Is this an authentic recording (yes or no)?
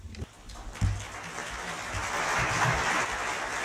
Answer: yes